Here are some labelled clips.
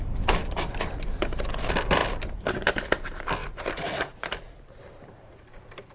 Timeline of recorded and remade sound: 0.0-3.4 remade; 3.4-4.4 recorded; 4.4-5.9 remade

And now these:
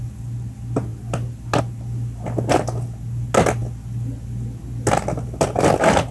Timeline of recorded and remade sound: 0.0-6.1 recorded